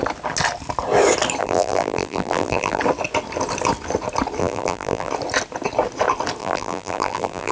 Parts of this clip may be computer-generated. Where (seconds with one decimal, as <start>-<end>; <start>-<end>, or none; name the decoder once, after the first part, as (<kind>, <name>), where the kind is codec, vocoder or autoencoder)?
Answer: 1.4-2.8 (vocoder, BigVGAN v2); 4.4-5.1; 6.4-7.5